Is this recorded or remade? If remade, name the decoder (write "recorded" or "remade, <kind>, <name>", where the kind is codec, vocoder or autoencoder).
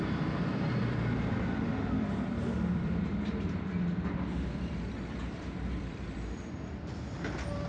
remade, vocoder, BigVGAN v2